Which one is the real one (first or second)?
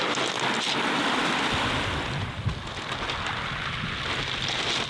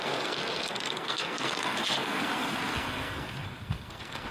first